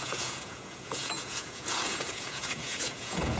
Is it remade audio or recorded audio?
remade